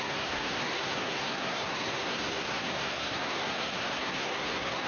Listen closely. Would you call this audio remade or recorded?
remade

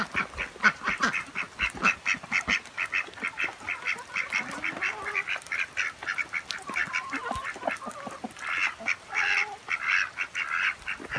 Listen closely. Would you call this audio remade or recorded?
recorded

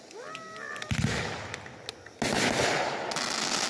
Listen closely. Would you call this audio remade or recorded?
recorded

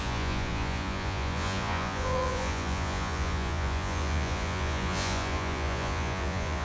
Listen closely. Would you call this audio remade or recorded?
remade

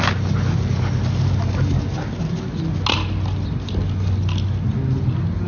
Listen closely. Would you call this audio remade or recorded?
recorded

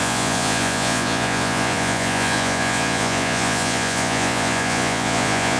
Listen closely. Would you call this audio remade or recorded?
remade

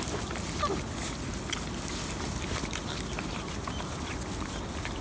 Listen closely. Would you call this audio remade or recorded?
recorded